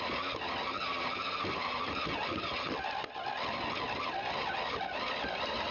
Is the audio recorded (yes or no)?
yes